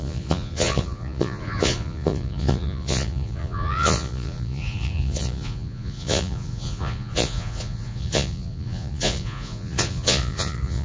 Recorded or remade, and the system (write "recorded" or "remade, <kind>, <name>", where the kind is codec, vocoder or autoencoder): remade, vocoder, Vocos